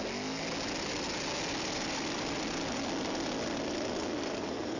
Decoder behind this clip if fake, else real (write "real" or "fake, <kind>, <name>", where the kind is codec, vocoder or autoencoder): real